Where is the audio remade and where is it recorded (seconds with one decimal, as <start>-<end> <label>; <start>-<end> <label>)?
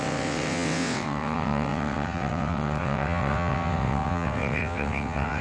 0.0-5.4 remade